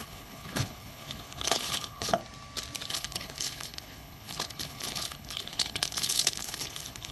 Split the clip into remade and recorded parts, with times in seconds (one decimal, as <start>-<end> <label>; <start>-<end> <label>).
0.0-2.2 remade; 2.2-2.9 recorded; 2.9-7.1 remade